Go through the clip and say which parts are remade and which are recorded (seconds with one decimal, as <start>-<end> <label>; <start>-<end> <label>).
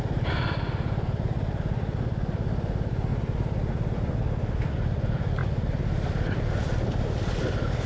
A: 0.0-7.9 recorded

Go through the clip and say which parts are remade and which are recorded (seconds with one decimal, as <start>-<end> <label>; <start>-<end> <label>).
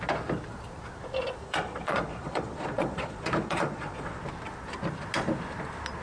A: 0.0-1.4 recorded; 1.4-4.2 remade; 4.2-6.0 recorded